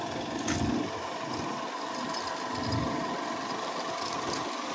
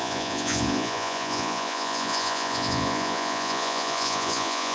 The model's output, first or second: second